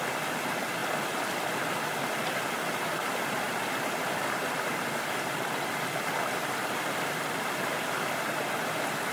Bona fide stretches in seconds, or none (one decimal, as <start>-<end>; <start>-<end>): 0.0-9.1